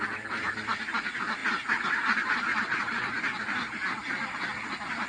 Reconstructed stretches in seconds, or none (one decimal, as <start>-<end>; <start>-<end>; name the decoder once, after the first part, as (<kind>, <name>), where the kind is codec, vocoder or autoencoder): 2.5-3.1 (vocoder, WaveNeXt)